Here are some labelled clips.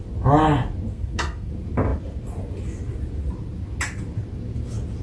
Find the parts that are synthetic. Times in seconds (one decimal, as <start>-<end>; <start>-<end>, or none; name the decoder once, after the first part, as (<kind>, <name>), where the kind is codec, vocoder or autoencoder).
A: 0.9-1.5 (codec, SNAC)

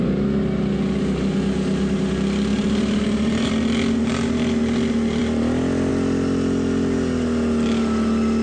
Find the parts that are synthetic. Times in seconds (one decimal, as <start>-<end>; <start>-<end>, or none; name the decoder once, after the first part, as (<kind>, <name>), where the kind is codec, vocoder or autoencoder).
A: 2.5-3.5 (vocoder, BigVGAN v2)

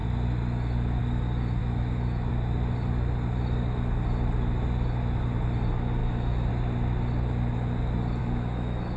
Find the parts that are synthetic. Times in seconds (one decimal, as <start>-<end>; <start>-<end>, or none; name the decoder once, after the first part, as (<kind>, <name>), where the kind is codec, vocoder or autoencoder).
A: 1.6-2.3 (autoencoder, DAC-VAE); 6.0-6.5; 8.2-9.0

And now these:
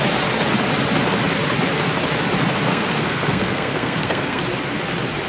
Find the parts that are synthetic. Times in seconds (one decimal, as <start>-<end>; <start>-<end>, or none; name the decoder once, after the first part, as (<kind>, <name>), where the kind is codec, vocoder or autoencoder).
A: 2.7-4.4 (codec, SNAC)